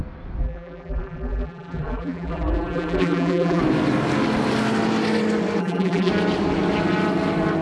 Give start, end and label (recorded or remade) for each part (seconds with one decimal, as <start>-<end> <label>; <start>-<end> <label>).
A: 0.0-0.4 recorded; 0.4-3.6 remade; 3.6-5.6 recorded; 5.6-6.1 remade; 6.1-7.6 recorded